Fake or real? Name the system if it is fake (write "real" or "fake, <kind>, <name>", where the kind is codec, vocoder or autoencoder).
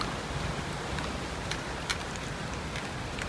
real